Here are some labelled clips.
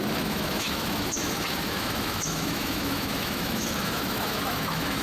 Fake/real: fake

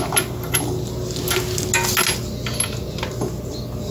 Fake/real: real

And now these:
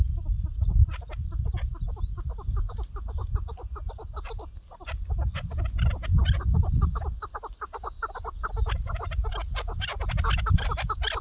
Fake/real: real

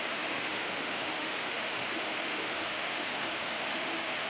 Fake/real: fake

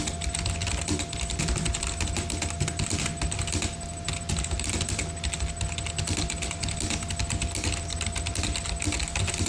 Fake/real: real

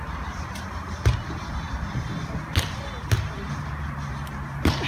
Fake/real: real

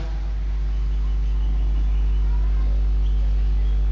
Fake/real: real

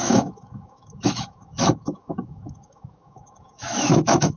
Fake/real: fake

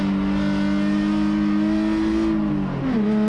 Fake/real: real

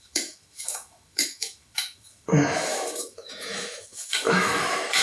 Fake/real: fake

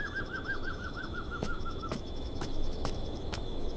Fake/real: fake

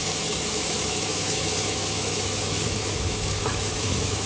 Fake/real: fake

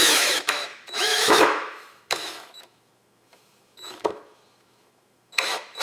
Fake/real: fake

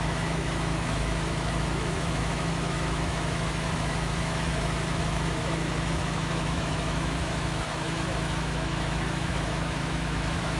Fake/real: fake